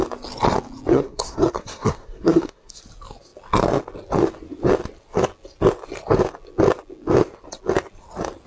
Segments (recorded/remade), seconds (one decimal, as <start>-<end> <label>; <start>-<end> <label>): 0.0-0.9 recorded; 0.9-2.8 remade; 2.8-8.5 recorded